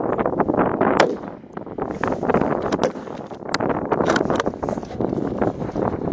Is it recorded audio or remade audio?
recorded